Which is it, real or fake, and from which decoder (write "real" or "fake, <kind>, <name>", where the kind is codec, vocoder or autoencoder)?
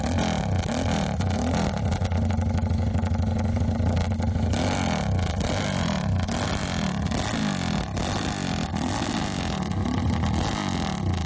real